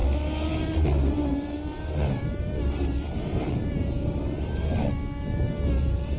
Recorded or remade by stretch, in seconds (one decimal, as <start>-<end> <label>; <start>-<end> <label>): 0.0-4.9 remade; 4.9-5.8 recorded; 5.8-6.2 remade

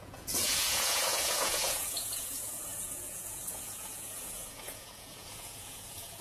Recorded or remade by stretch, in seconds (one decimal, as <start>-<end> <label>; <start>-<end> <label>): 0.0-6.2 remade

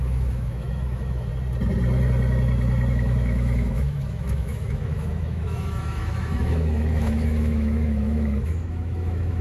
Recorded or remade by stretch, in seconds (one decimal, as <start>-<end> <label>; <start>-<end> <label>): 0.0-1.3 remade; 1.3-2.9 recorded; 2.9-9.4 remade

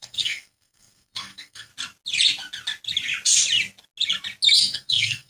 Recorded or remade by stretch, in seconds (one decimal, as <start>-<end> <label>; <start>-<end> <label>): 0.0-1.7 remade; 1.7-4.6 recorded; 4.6-5.3 remade

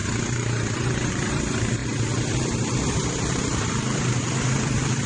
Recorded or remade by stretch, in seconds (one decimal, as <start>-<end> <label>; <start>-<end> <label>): 0.0-1.8 remade; 1.8-2.9 recorded; 2.9-5.1 remade

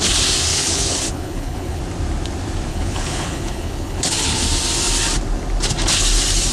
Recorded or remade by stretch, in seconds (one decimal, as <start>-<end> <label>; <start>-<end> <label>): 0.0-0.5 recorded; 0.5-1.8 remade; 1.8-2.7 recorded; 2.7-4.4 remade; 4.4-6.5 recorded

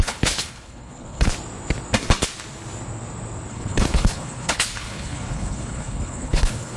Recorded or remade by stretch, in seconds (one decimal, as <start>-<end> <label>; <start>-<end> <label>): 0.0-1.3 remade; 1.3-3.5 recorded; 3.5-6.8 remade

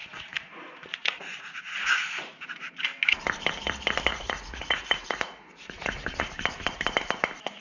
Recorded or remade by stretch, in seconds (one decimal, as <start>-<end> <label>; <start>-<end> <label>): 0.0-2.6 remade; 2.6-4.1 recorded; 4.1-6.2 remade; 6.2-7.6 recorded